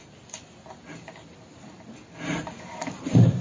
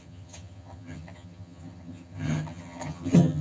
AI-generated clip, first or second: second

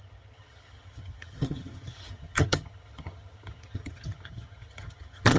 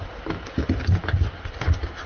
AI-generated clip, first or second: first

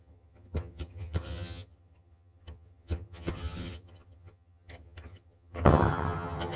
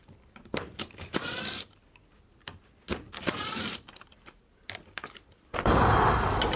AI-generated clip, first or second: first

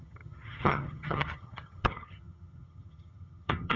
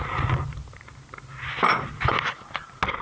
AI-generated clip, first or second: first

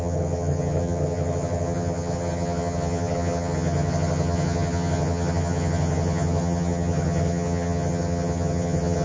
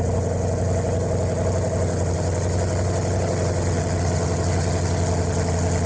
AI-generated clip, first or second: first